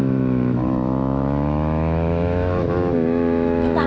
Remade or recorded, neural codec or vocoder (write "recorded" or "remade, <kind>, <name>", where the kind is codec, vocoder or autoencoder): remade, autoencoder, DAC-VAE